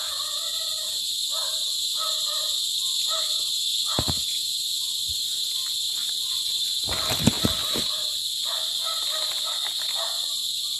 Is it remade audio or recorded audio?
recorded